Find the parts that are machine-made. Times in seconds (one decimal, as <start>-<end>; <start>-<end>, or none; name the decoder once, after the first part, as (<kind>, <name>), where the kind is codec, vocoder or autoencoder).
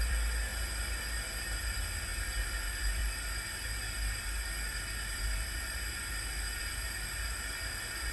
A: 0.0-0.5 (vocoder, BigVGAN v2); 1.6-2.1; 2.6-3.0